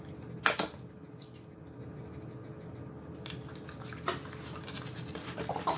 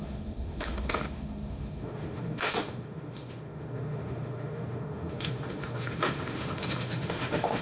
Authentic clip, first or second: first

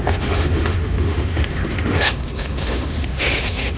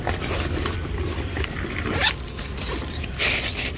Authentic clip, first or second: second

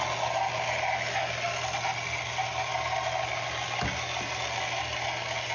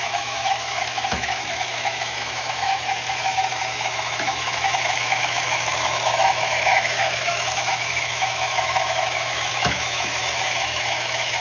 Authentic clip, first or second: first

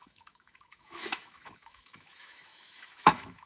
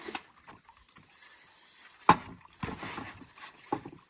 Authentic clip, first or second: second